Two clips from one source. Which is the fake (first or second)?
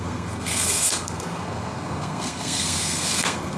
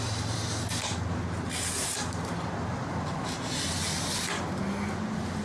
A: first